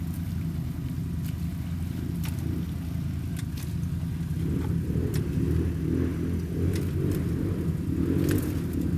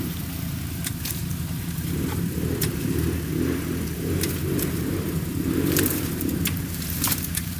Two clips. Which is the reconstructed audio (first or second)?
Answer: second